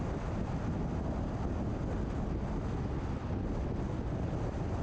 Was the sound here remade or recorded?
recorded